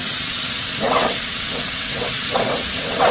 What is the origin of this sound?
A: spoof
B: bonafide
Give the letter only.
A